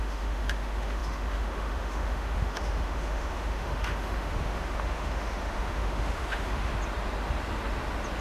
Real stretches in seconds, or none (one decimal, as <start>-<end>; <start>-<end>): 6.7-8.2